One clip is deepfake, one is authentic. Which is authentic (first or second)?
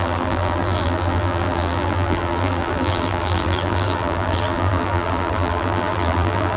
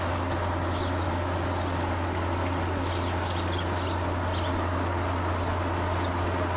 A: second